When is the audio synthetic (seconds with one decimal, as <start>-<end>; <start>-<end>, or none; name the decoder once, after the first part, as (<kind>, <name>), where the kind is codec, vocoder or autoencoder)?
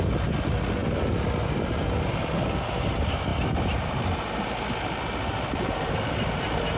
none